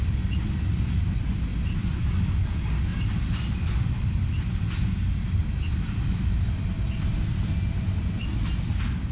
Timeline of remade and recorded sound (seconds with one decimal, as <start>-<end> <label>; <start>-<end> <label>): 0.0-2.9 recorded; 2.9-5.6 remade; 5.6-9.1 recorded